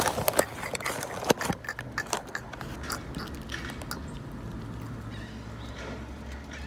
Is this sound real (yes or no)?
yes